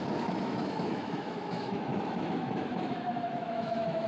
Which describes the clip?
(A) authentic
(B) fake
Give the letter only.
B